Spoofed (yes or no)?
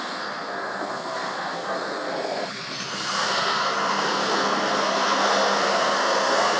yes